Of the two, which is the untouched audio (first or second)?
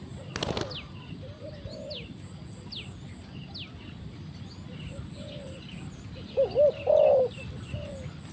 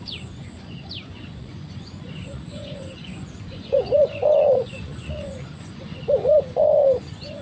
first